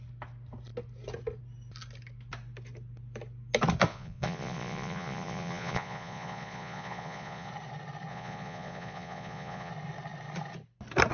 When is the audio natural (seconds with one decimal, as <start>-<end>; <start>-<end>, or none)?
0.0-3.9; 7.5-8.1; 9.7-11.1